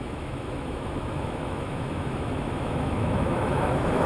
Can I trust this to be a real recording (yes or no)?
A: no